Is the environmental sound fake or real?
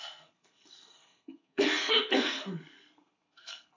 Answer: fake